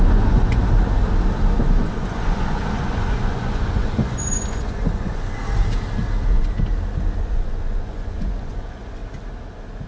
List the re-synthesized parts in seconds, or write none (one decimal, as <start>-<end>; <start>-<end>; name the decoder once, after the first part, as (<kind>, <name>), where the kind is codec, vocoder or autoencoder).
0.0-0.6 (vocoder, Vocos); 1.8-5.4; 7.2-9.0